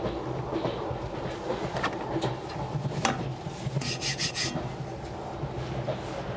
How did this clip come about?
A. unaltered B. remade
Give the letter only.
A